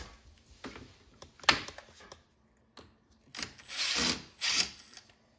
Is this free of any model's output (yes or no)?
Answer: yes